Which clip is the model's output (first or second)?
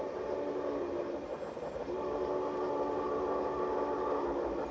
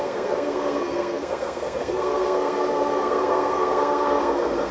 second